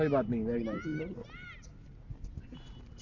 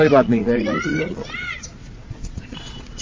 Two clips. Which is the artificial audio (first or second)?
second